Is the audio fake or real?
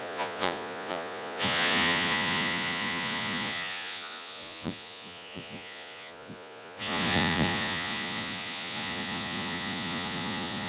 fake